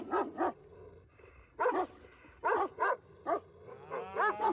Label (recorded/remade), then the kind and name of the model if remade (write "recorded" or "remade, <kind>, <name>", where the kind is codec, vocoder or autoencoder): recorded